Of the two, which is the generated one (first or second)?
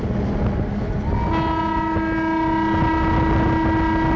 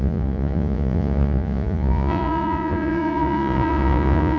second